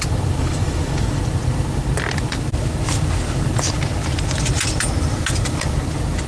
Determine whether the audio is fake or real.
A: real